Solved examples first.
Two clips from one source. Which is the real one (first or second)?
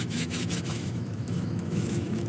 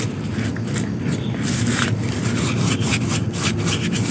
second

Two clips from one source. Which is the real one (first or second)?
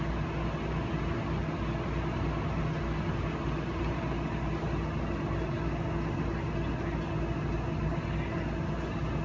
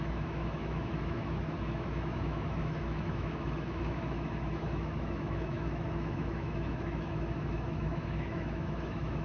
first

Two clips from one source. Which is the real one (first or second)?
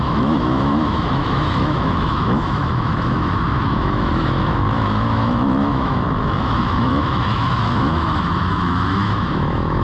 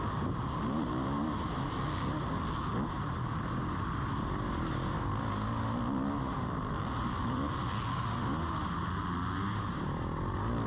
second